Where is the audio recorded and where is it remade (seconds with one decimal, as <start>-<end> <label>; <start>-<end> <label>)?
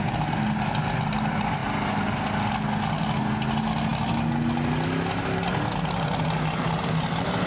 0.0-7.5 recorded